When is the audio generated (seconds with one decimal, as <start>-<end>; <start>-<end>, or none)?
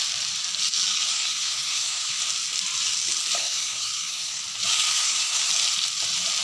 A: 1.1-2.2; 3.4-4.4; 4.9-5.5